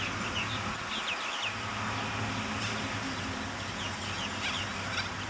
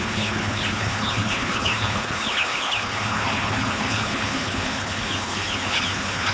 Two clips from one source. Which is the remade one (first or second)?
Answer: second